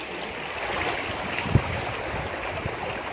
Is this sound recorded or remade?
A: recorded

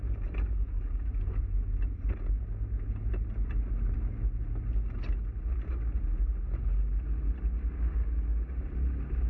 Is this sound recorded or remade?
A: recorded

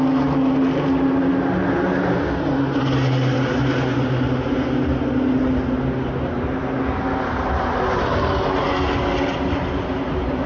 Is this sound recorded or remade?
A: recorded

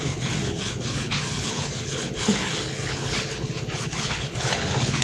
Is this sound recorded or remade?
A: remade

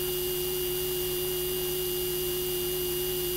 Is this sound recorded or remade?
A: recorded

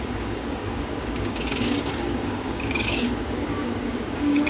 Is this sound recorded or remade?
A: remade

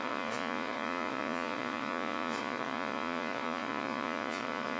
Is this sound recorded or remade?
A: remade